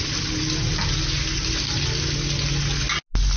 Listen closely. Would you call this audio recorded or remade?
recorded